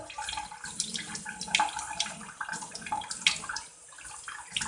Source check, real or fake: real